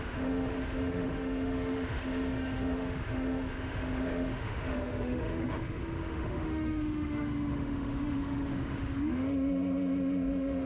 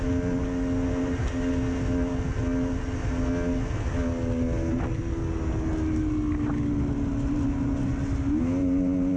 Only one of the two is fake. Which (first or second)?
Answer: first